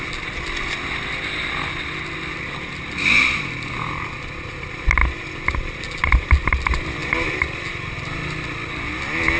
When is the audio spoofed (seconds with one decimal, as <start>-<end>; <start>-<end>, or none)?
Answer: none